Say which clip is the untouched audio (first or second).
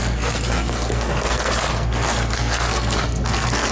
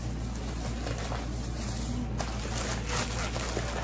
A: second